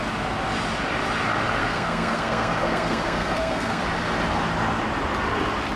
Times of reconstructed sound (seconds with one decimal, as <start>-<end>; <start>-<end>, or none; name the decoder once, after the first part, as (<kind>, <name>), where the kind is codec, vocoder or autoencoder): 1.6-3.8 (codec, SNAC)